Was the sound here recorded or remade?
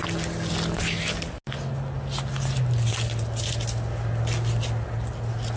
recorded